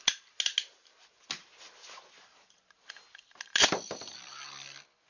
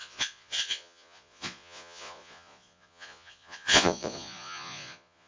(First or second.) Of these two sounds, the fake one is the second